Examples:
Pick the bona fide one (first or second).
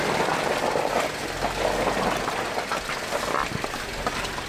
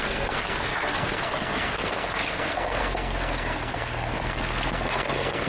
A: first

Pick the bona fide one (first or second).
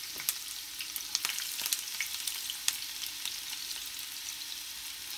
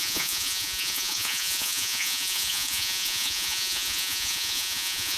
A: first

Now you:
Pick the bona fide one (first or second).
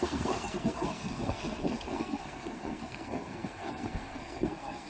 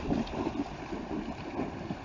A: second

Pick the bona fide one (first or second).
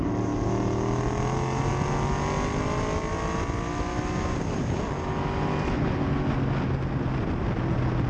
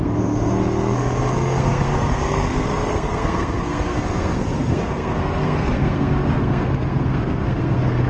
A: first